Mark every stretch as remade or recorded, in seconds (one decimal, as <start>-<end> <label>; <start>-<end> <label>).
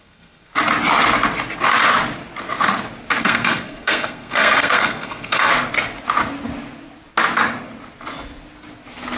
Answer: 0.0-0.5 remade; 0.5-3.2 recorded; 3.2-5.5 remade; 5.5-9.2 recorded